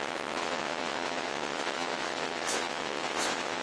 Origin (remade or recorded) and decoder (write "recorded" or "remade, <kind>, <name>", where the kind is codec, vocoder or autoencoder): remade, vocoder, WaveNeXt